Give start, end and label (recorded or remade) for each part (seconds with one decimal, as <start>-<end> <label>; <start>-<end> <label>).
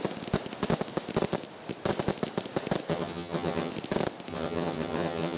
0.0-2.9 recorded; 2.9-3.7 remade; 3.7-4.3 recorded; 4.3-5.4 remade